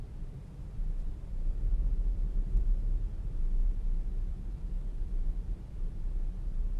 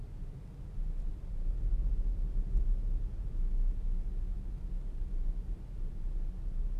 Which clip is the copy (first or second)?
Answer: first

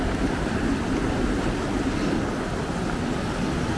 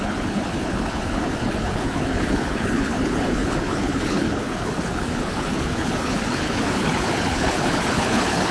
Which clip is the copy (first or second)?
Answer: second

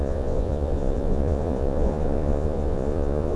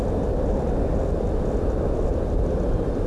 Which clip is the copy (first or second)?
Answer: first